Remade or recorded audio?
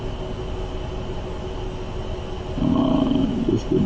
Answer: recorded